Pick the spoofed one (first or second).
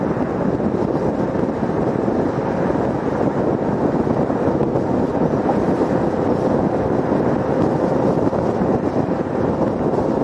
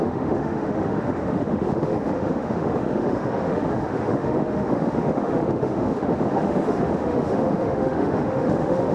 second